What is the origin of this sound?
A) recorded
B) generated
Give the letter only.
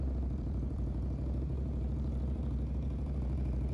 B